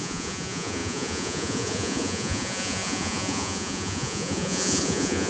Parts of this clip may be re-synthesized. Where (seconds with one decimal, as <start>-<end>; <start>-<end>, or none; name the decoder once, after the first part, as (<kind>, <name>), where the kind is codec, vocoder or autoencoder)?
0.0-5.3 (vocoder, Vocos)